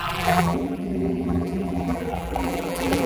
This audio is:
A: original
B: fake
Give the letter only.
B